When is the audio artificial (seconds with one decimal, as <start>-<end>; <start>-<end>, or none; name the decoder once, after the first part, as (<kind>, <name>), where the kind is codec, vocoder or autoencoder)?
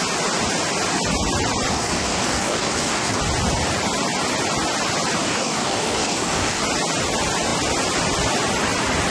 1.7-3.2 (codec, DAC); 5.2-6.6